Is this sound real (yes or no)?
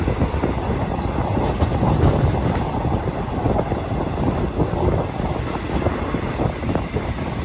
yes